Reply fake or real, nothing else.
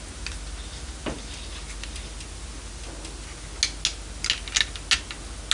real